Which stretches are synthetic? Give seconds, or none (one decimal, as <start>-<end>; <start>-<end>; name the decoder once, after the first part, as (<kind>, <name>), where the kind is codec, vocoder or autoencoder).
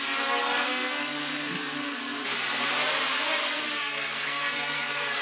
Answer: 0.4-2.0 (codec, SNAC); 3.4-5.2